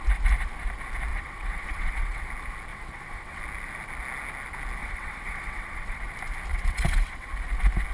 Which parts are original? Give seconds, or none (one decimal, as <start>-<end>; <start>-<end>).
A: 0.0-1.1; 2.3-2.7; 3.4-4.8; 6.1-6.5; 7.3-7.9